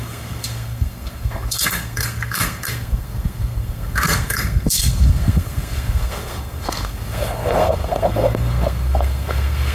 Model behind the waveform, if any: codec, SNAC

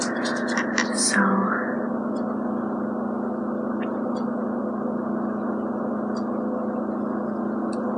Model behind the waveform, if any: none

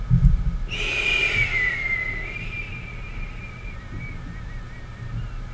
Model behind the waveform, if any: none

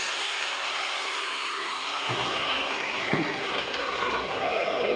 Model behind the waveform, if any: codec, SNAC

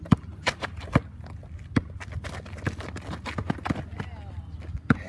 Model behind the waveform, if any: none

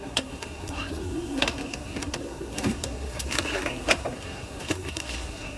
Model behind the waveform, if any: codec, SNAC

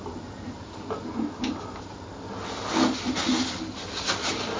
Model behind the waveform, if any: none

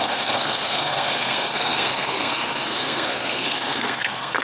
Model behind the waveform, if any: codec, SNAC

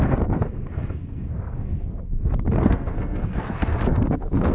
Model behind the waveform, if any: codec, SNAC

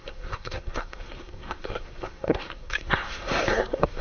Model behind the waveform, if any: codec, SNAC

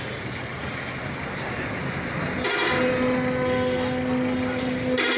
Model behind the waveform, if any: none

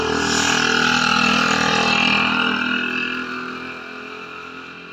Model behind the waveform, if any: none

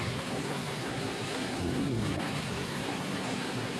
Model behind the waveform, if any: codec, SNAC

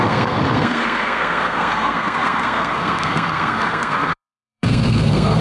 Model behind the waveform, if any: codec, SNAC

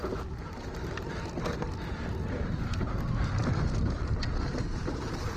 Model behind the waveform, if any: none